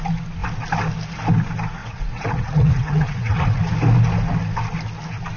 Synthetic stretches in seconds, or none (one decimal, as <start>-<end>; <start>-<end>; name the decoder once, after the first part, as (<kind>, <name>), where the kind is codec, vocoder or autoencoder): 1.8-3.6 (vocoder, WaveNeXt)